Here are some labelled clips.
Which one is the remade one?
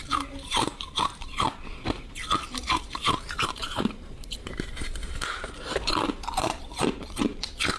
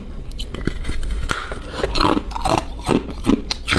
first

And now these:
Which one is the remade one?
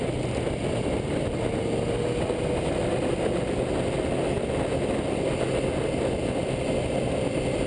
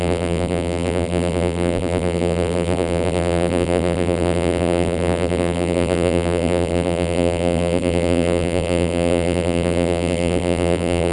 second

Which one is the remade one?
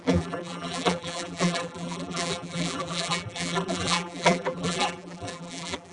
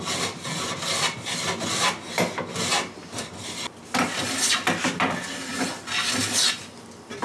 first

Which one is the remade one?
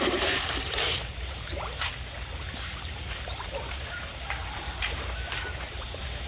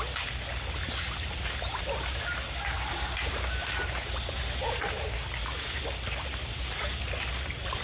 first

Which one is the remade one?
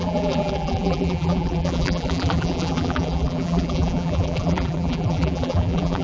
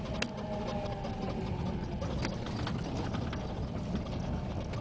first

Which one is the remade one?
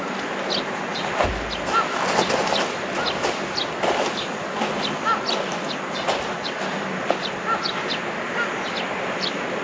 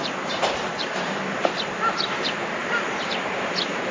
second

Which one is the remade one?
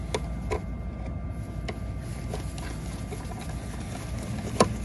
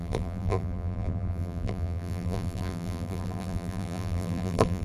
second